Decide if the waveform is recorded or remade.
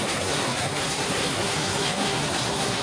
remade